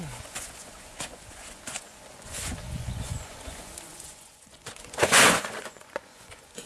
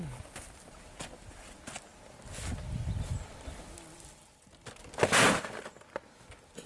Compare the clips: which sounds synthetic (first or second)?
first